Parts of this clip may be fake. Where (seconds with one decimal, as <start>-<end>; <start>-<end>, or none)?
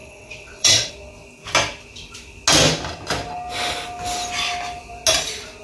0.0-0.9